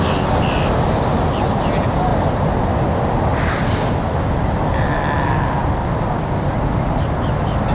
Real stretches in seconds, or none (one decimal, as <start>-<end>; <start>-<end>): 0.0-7.7